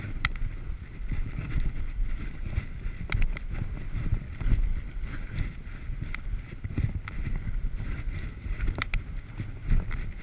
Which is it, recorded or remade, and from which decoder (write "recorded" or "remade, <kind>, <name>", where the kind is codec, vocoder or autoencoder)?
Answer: recorded